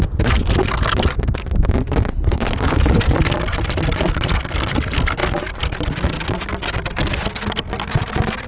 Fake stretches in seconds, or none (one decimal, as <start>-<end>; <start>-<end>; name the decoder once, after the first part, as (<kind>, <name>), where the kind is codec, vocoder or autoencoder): 2.1-3.0 (codec, HILCodec)